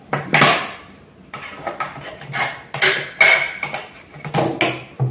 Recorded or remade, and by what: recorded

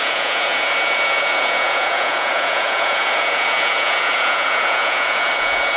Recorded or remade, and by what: remade, vocoder, Vocos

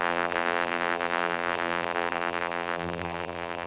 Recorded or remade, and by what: remade, vocoder, BigVGAN v2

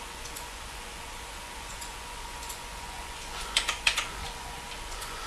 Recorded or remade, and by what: remade, vocoder, Vocos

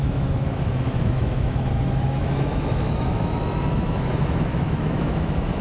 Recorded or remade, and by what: remade, autoencoder, DAC-VAE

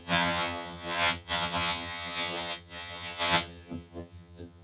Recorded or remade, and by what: remade, vocoder, HiFi-GAN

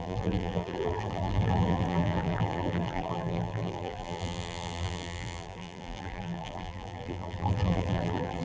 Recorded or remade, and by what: remade, vocoder, BigVGAN v2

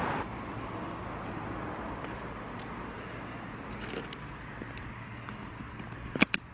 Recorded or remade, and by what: recorded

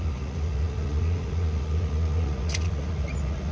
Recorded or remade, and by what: remade, vocoder, Vocos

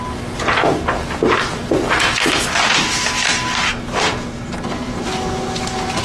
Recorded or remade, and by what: recorded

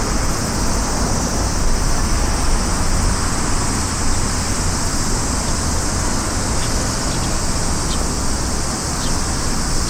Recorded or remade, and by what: recorded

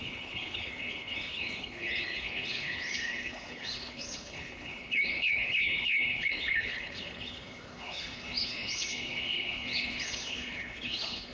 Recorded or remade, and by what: remade, codec, HILCodec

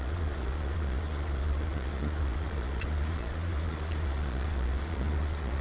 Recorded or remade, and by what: remade, vocoder, Vocos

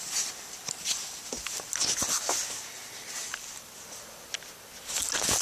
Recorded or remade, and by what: recorded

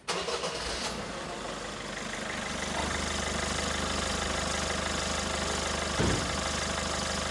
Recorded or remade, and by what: recorded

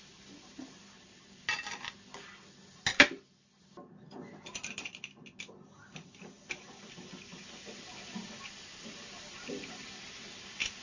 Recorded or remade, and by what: recorded